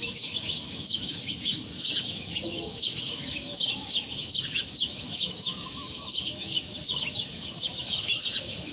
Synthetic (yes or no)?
yes